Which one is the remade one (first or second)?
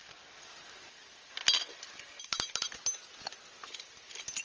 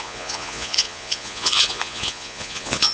second